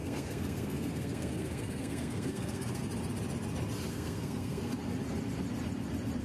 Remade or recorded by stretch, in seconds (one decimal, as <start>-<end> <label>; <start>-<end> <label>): 0.0-2.8 remade; 2.8-3.9 recorded; 3.9-4.7 remade; 4.7-6.2 recorded